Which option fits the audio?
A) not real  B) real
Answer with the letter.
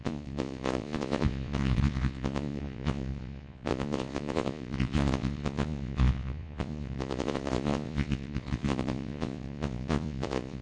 A